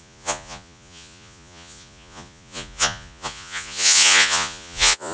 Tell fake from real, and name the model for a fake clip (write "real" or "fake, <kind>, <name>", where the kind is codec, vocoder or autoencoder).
fake, vocoder, Vocos